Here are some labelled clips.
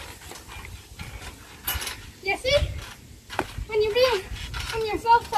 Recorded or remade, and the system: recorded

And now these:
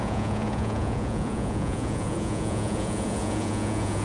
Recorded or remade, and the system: remade, vocoder, Vocos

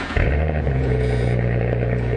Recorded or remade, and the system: remade, vocoder, Vocos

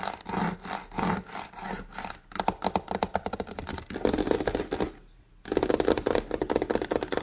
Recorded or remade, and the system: recorded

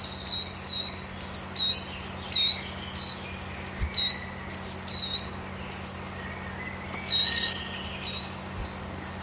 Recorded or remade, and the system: recorded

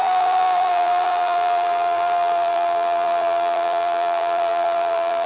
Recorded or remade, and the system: remade, vocoder, BigVGAN v2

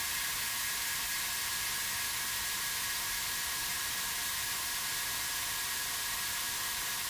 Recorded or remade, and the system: recorded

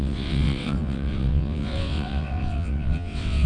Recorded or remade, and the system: remade, vocoder, WaveNeXt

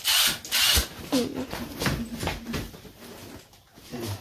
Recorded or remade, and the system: recorded